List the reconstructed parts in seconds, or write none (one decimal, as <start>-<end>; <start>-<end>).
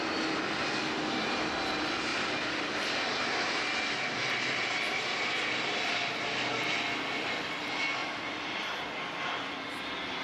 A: 2.1-6.1; 8.0-8.8